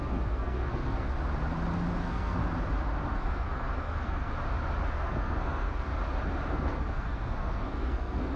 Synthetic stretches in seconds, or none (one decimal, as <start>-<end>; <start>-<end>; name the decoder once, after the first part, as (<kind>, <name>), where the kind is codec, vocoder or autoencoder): 0.0-1.1 (codec, SNAC); 2.0-2.4; 3.1-4.3; 4.9-5.9; 6.5-8.4